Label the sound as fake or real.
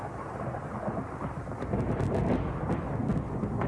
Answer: real